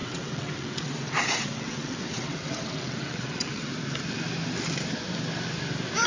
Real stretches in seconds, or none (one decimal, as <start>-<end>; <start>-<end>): 3.7-6.1